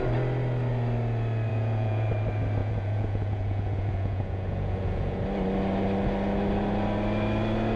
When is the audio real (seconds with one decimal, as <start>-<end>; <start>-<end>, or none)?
0.0-1.5; 2.1-2.6; 5.2-7.8